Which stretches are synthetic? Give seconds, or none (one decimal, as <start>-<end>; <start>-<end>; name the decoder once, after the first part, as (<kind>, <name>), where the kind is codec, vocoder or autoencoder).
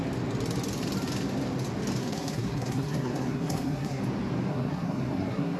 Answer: 2.0-4.0 (codec, SNAC); 4.5-5.6